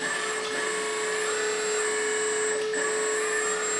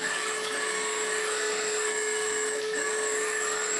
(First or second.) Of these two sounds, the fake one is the second